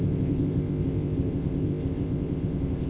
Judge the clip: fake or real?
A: fake